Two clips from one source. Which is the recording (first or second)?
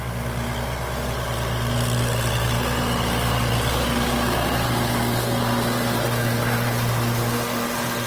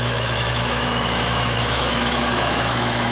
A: first